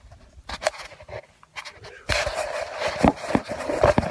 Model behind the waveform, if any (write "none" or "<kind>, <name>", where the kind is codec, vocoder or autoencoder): none